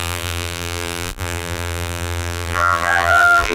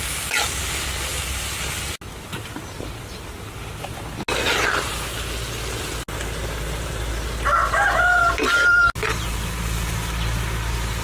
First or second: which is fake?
first